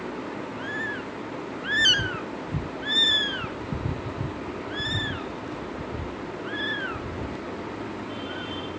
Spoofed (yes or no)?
no